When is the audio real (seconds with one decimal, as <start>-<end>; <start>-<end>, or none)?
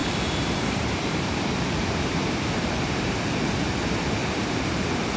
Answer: 3.1-4.2